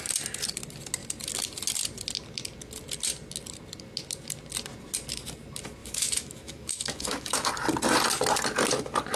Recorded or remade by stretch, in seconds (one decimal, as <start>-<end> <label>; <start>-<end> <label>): 0.0-5.8 recorded; 5.8-7.5 remade; 7.5-9.2 recorded